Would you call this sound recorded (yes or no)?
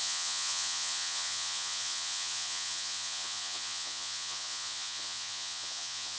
no